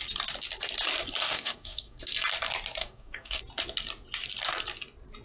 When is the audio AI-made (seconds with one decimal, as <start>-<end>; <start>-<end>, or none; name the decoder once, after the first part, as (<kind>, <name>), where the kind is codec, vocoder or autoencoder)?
1.2-2.0 (codec, DAC); 2.8-3.4